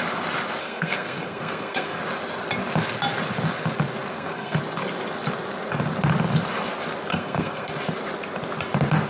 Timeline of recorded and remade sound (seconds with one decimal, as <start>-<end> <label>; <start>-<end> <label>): 0.0-0.6 recorded; 0.6-2.0 remade; 2.0-4.1 recorded; 4.1-4.6 remade; 4.6-7.1 recorded; 7.1-7.7 remade; 7.7-9.1 recorded